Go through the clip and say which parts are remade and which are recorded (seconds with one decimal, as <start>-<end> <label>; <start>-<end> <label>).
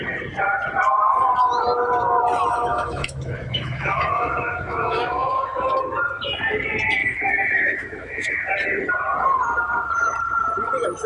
0.0-2.7 recorded; 2.7-5.8 remade; 5.8-7.0 recorded; 7.0-8.3 remade; 8.3-11.1 recorded